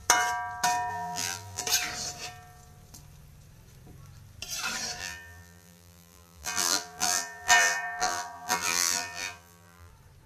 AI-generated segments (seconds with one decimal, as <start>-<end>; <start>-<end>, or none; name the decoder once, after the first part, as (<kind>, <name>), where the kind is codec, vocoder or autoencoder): 0.9-1.6 (vocoder, BigVGAN v2); 5.0-9.9